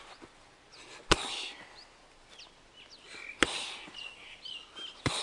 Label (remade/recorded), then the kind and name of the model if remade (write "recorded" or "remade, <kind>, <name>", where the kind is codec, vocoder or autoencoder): recorded